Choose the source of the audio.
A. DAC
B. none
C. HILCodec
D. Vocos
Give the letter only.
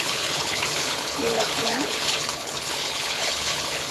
C